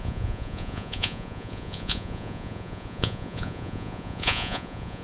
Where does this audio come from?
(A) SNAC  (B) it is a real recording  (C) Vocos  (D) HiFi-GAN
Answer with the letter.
C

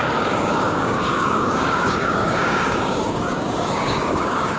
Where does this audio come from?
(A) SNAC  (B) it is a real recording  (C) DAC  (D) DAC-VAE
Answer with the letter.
C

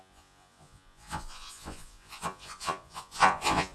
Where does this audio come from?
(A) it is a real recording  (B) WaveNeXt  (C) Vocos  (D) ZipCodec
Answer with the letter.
C